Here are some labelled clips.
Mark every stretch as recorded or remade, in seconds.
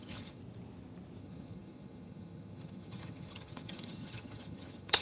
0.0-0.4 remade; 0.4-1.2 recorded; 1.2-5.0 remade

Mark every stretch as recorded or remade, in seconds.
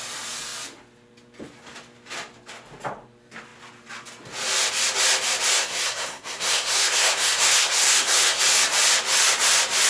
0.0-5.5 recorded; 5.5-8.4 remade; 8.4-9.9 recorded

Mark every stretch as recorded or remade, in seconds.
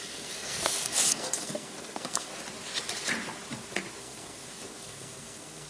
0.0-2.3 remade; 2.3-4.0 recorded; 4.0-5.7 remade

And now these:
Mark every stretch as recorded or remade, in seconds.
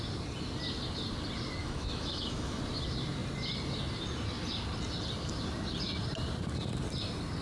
0.0-1.6 recorded; 1.6-2.6 remade; 2.6-7.4 recorded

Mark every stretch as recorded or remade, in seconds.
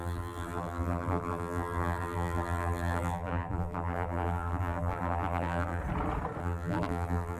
0.0-5.8 remade; 5.8-6.4 recorded; 6.4-7.4 remade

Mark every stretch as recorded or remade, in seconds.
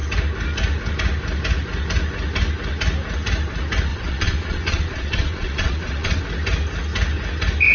0.0-3.9 recorded; 3.9-6.2 remade; 6.2-7.7 recorded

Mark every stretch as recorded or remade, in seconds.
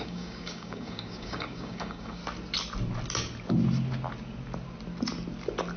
0.0-2.2 remade; 2.2-5.8 recorded